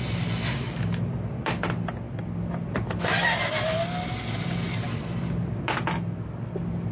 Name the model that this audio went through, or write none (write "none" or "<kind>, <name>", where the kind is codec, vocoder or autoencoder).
none